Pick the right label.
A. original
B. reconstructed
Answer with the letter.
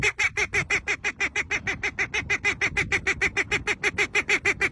A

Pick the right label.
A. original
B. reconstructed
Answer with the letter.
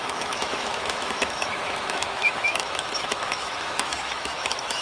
B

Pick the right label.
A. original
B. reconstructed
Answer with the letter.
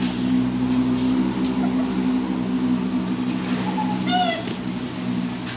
A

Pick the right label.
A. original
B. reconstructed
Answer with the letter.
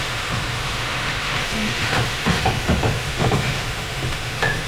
B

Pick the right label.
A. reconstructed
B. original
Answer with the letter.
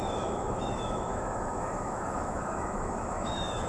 A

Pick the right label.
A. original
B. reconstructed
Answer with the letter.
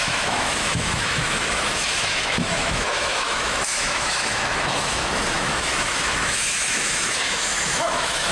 B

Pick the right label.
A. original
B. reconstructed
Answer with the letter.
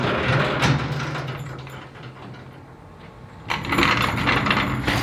A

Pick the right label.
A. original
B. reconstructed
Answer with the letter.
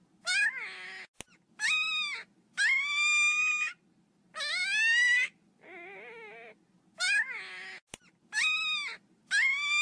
A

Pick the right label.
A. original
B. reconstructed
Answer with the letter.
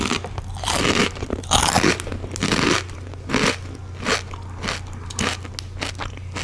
A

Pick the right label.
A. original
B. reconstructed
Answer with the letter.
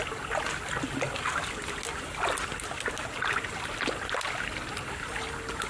A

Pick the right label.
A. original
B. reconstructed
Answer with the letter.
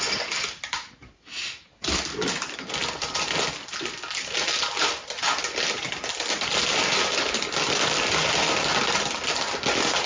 A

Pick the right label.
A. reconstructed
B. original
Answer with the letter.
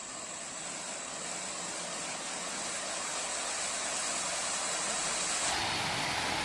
B